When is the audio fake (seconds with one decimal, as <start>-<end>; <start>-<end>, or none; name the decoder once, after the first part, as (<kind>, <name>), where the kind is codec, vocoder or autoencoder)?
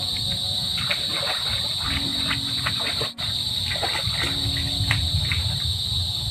2.1-4.1 (vocoder, BigVGAN v2)